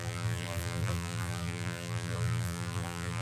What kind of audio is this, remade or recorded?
remade